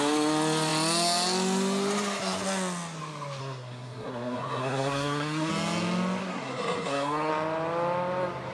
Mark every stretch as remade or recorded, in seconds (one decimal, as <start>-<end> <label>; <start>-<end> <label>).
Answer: 0.0-3.4 recorded; 3.4-5.5 remade; 5.5-6.2 recorded; 6.2-7.3 remade; 7.3-8.5 recorded